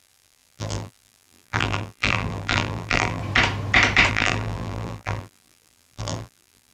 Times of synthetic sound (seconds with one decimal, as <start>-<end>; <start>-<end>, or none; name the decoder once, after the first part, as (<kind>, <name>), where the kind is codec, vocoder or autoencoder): 0.0-3.2 (vocoder, BigVGAN v2); 4.1-6.7